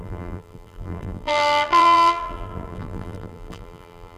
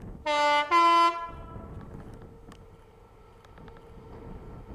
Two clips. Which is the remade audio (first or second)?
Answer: first